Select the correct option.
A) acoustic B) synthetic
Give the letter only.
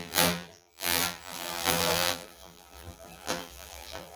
B